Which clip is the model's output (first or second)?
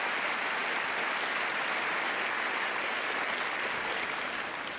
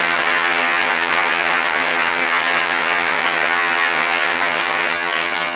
second